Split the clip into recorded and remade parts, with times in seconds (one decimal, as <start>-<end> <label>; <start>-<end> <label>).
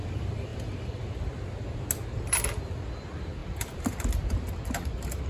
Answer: 0.0-5.3 recorded